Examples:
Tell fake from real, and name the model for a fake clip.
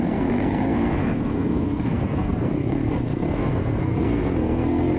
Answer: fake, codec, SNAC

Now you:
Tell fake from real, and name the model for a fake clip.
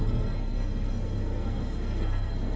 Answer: fake, codec, SNAC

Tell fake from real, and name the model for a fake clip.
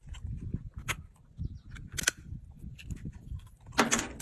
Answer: real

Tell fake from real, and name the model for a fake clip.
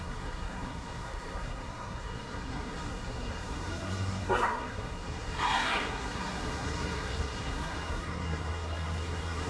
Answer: fake, codec, SNAC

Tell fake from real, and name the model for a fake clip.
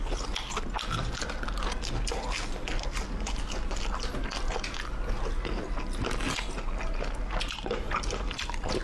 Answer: real